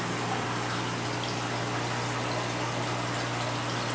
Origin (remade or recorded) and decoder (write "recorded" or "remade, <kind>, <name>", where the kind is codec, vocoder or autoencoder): recorded